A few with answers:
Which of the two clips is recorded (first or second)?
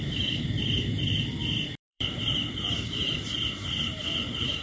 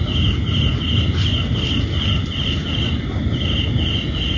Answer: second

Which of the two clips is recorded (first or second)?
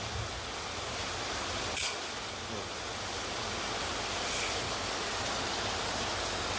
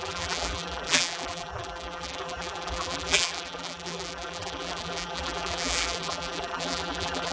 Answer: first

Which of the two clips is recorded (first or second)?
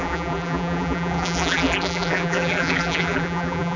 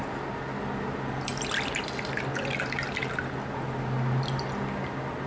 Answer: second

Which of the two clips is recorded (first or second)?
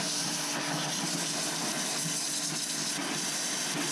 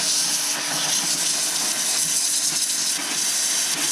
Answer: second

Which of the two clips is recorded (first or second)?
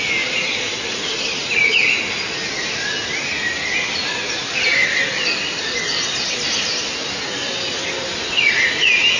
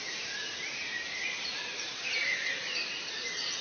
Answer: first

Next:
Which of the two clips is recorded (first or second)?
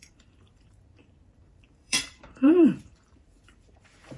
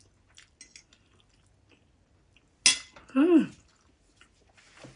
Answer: second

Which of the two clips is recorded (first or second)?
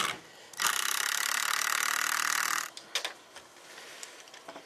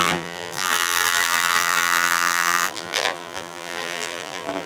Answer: first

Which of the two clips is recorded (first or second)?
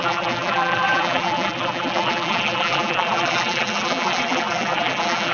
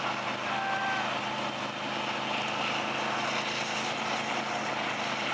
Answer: second